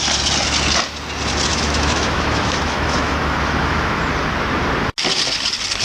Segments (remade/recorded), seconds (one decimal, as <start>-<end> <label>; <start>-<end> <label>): 0.0-1.5 recorded; 1.5-4.0 remade; 4.0-5.8 recorded